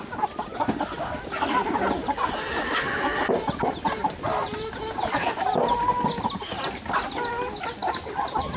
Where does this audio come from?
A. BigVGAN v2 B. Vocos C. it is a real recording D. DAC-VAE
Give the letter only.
C